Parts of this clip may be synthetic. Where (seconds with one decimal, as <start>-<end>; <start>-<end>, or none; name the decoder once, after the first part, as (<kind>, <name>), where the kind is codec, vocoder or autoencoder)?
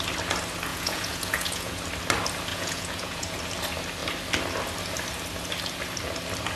0.7-1.8 (vocoder, Vocos); 2.5-3.4